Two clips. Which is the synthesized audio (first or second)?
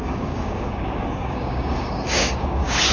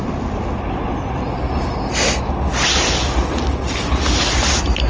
first